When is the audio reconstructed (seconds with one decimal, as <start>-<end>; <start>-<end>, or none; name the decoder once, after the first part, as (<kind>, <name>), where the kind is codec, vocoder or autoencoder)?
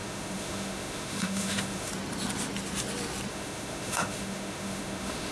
0.0-1.9 (autoencoder, DAC-VAE); 3.3-5.3